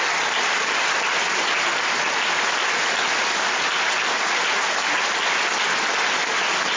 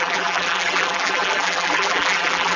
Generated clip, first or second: second